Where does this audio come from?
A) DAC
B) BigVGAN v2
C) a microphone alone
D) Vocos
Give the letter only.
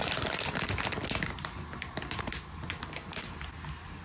C